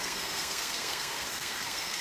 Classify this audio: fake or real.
fake